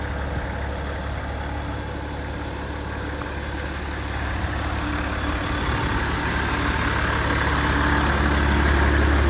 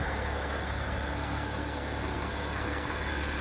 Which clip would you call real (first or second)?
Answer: first